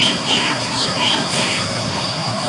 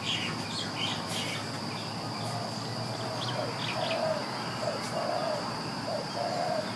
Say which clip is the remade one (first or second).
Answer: first